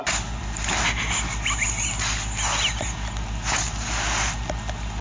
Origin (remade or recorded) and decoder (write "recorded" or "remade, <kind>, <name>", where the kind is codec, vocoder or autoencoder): recorded